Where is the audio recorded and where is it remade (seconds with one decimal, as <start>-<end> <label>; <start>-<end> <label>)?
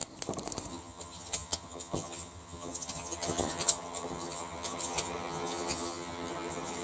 0.0-0.7 recorded; 0.7-6.8 remade